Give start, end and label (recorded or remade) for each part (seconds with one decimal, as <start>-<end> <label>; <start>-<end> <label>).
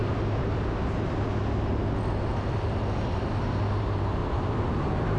0.0-4.2 recorded; 4.2-5.2 remade